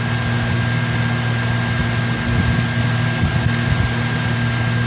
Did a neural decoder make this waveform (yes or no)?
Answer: no